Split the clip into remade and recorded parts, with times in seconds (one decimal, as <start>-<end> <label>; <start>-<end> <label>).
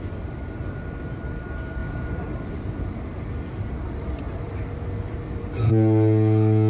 0.0-1.8 recorded; 1.8-5.7 remade; 5.7-6.7 recorded